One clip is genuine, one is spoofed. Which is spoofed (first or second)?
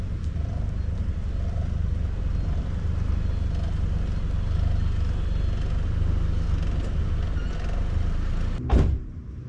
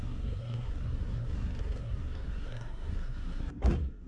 second